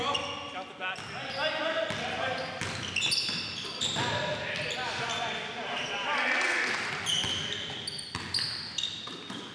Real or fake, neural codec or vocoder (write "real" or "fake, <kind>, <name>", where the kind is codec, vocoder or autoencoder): real